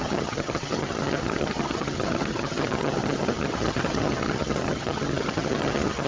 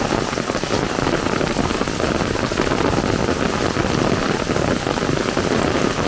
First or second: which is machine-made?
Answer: first